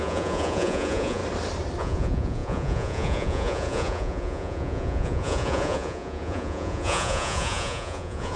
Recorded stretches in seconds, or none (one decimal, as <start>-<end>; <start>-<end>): 1.2-1.8